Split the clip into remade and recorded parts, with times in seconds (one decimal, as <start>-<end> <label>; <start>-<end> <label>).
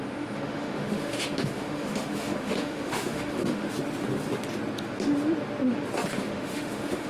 0.0-3.7 remade; 3.7-6.1 recorded; 6.1-7.1 remade